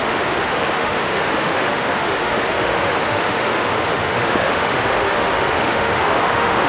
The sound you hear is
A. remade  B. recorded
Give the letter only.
A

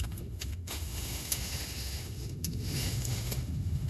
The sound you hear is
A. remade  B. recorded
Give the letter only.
A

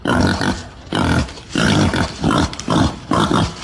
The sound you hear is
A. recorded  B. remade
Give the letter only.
A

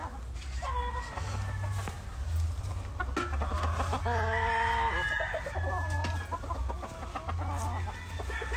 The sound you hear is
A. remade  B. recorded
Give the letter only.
B